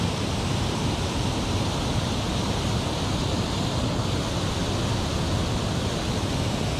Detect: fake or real real